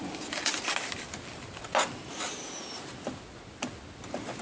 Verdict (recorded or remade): recorded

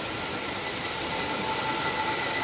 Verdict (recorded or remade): recorded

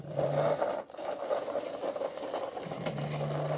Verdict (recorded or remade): recorded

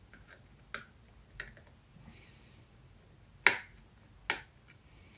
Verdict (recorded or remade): recorded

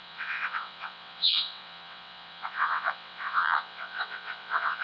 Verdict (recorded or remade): remade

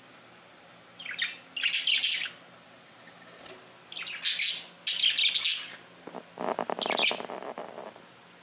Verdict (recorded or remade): recorded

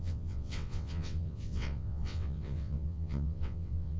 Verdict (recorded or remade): remade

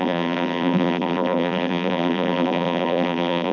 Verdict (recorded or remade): remade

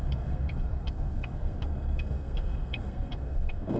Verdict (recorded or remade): remade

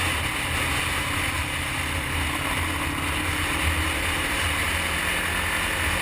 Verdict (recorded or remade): recorded